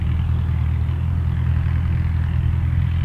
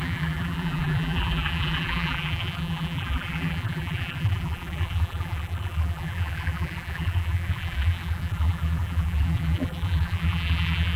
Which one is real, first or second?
first